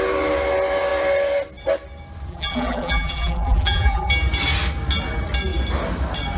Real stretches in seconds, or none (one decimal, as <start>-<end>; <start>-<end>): 0.0-2.3; 4.1-6.4